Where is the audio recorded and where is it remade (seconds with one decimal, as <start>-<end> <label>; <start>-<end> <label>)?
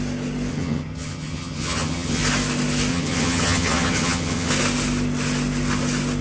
0.0-0.5 recorded; 0.5-2.2 remade; 2.2-2.9 recorded; 2.9-4.5 remade; 4.5-6.2 recorded